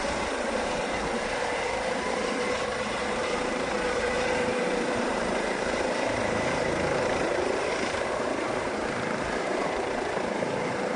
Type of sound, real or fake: fake